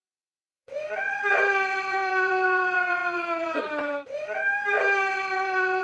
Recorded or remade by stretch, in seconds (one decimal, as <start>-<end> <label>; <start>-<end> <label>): 0.0-4.4 remade; 4.4-5.1 recorded; 5.1-5.8 remade